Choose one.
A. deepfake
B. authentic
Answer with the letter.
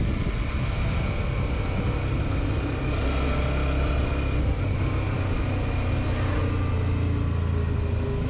B